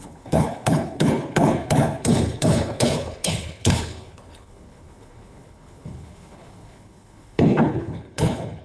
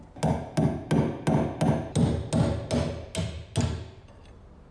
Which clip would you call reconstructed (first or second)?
first